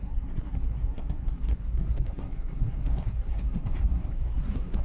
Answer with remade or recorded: remade